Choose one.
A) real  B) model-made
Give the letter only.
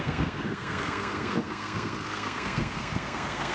B